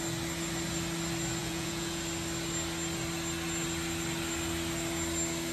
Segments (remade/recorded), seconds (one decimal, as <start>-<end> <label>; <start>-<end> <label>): 0.0-1.4 recorded; 1.4-2.0 remade; 2.0-5.5 recorded